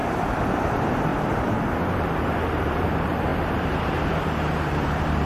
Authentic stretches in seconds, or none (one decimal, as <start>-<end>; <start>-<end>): 0.0-0.7; 1.1-1.6